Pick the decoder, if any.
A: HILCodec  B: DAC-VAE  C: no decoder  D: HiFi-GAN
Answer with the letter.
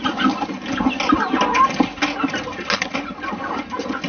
C